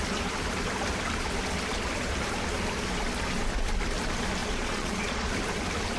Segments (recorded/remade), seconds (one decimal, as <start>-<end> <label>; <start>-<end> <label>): 0.0-4.4 recorded; 4.4-5.3 remade; 5.3-6.0 recorded